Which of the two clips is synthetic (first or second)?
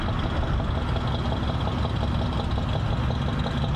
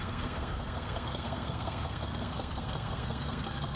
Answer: second